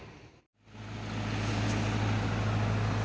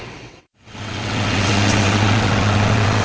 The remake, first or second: second